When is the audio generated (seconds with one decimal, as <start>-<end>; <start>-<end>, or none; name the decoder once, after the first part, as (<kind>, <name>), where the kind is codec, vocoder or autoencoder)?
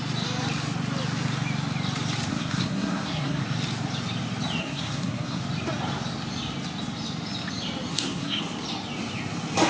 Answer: 2.3-3.4 (codec, SNAC); 4.6-5.4; 7.9-8.4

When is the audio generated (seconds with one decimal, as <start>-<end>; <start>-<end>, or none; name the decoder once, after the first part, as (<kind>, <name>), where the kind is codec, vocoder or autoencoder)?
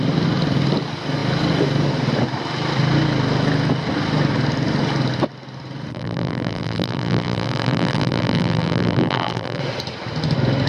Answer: 5.9-9.6 (vocoder, BigVGAN v2)